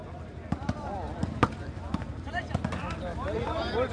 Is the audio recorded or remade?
remade